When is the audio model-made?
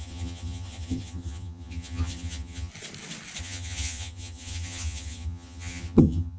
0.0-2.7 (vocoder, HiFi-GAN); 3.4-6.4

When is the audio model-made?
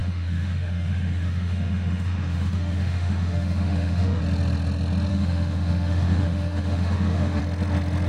0.0-4.2 (autoencoder, DAC-VAE); 5.1-7.4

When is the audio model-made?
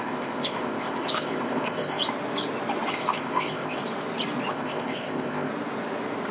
0.0-2.0 (codec, ZipCodec); 2.9-3.8; 4.5-5.5